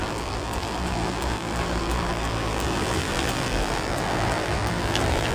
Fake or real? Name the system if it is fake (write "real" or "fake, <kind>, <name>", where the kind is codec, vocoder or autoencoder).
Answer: fake, vocoder, BigVGAN v2